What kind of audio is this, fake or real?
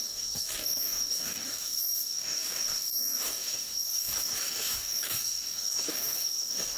fake